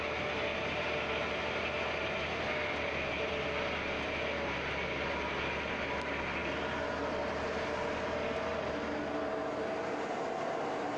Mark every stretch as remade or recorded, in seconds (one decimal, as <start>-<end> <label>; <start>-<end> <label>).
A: 0.0-11.0 recorded